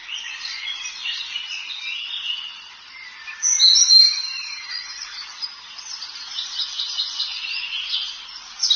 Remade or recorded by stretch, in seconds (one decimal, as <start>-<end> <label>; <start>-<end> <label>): 0.0-1.4 remade; 1.4-4.7 recorded; 4.7-5.3 remade; 5.3-6.2 recorded; 6.2-8.8 remade